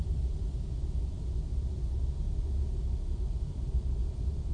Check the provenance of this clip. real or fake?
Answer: real